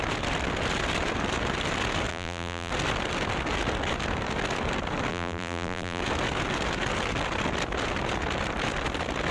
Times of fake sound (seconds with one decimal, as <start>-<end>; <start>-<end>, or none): 2.1-2.7; 5.1-6.0